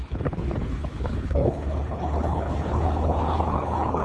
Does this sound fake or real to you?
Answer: fake